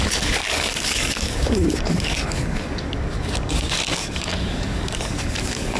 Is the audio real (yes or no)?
no